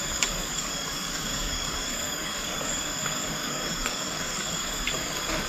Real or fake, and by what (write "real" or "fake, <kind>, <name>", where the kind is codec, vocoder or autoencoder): fake, codec, DAC